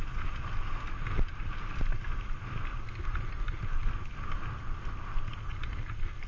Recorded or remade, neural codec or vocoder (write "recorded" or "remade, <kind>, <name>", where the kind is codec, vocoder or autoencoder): recorded